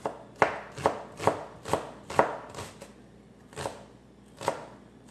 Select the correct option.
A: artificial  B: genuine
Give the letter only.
B